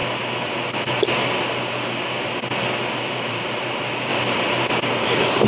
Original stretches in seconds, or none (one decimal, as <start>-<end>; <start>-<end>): 0.0-2.9; 4.1-4.8